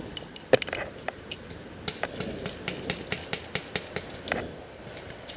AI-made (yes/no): no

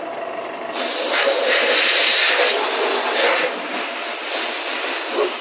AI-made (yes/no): no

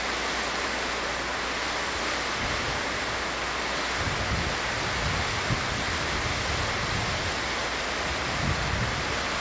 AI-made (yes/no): no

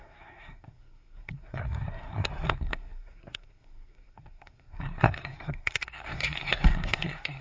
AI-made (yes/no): yes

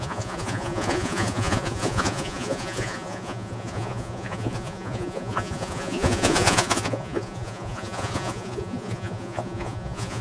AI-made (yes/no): yes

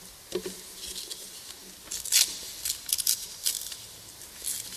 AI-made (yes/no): no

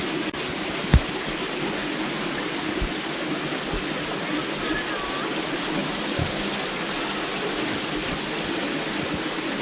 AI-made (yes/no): no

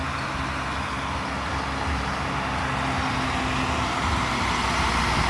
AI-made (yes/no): no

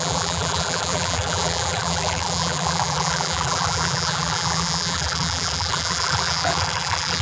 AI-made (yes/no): yes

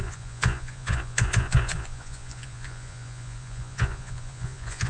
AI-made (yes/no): yes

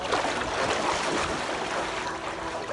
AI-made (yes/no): no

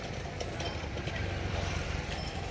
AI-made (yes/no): yes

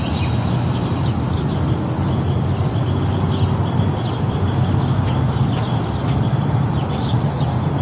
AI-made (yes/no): no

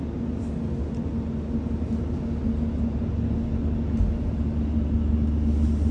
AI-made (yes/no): no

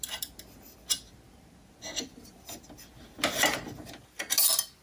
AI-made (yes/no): no